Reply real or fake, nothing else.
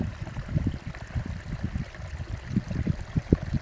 real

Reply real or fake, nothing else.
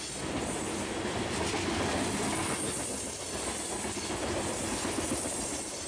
real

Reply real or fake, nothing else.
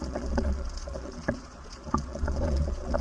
fake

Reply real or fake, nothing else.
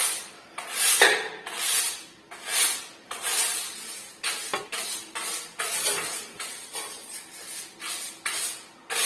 real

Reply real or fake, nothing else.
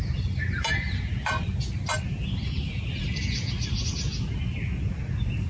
real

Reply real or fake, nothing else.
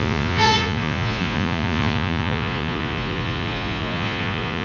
fake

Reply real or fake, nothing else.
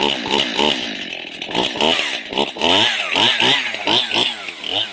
real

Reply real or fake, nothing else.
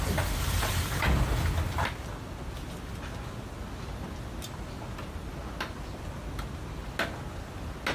real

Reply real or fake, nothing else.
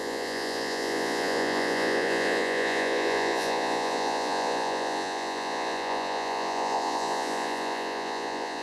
fake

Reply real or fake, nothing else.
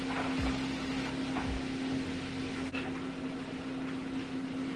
real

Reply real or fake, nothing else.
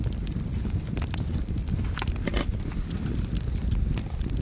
real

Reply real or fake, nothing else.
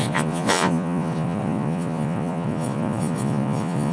fake